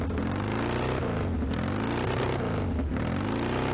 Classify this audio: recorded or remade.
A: recorded